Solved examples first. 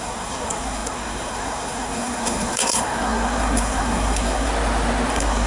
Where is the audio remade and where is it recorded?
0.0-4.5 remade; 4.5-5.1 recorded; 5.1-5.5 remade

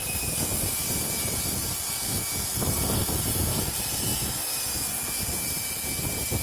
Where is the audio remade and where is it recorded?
0.0-6.4 remade

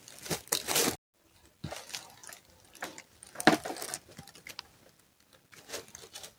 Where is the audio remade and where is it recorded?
0.0-6.4 recorded